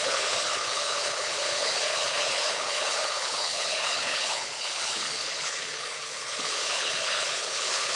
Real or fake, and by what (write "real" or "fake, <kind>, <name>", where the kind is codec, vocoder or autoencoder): fake, codec, HILCodec